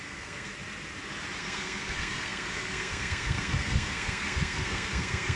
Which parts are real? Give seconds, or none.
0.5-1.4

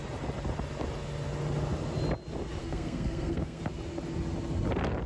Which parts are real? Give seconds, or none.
0.0-2.6; 3.6-5.1

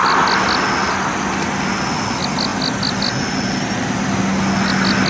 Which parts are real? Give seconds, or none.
0.0-5.1

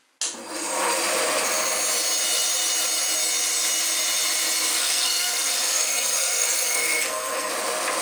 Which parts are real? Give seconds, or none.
0.0-4.7; 7.5-8.0